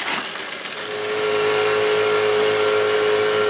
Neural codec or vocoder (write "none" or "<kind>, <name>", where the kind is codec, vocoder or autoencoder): none